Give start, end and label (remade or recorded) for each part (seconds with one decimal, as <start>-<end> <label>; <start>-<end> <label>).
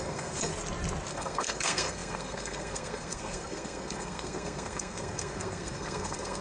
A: 0.0-0.5 remade; 0.5-1.1 recorded; 1.1-6.4 remade